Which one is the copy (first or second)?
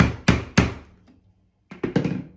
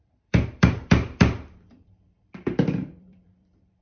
second